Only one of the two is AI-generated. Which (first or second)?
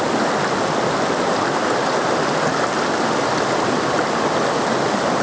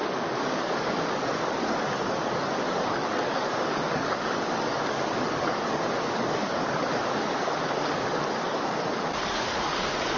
second